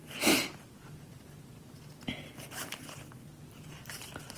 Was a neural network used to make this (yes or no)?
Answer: no